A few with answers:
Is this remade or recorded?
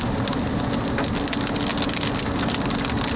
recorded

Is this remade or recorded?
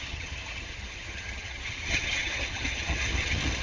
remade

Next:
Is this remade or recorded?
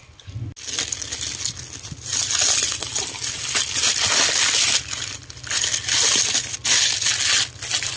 recorded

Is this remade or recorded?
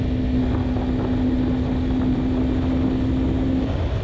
recorded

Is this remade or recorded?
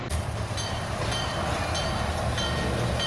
recorded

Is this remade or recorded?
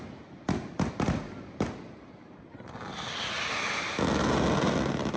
recorded